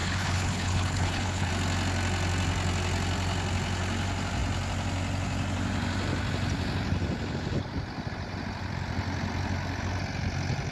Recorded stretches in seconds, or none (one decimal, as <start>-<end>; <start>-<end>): 1.5-10.7